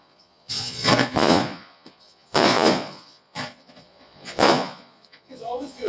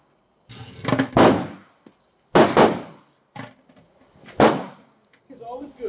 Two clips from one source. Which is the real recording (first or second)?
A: second